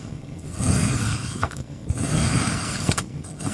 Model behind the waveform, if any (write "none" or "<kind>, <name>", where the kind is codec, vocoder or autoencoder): codec, SNAC